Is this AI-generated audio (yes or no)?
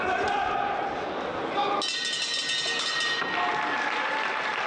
no